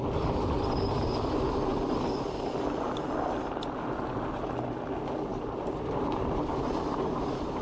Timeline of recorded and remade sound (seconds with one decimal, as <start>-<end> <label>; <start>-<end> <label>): 0.0-5.3 recorded; 5.3-7.6 remade